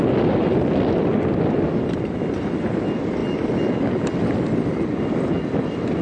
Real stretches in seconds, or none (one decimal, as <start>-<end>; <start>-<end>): 0.0-6.0